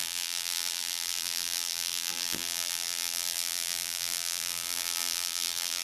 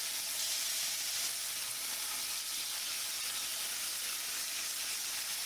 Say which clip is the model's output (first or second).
first